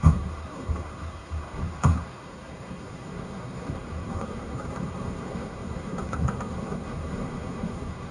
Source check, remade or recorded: remade